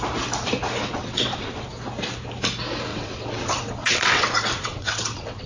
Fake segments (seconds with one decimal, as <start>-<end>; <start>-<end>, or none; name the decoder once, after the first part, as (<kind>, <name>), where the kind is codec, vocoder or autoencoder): 0.8-1.7 (vocoder, WaveNeXt); 2.9-5.5